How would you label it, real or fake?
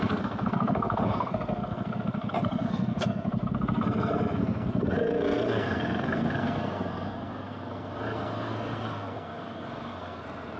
fake